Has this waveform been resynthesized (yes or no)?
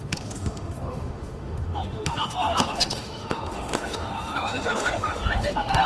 yes